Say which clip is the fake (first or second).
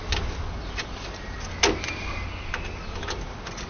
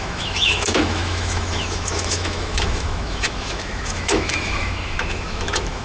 second